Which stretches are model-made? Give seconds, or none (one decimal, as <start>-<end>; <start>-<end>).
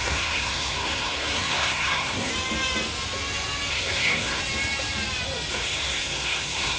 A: 0.0-2.3; 3.7-4.4; 5.5-6.8